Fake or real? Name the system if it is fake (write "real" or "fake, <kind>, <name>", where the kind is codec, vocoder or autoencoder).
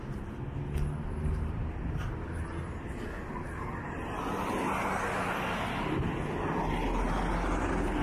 real